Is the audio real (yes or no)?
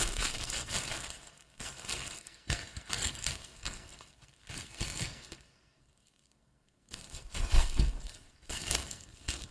no